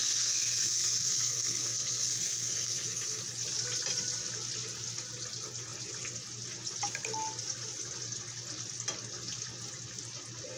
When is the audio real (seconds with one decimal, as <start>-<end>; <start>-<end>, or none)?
3.2-10.6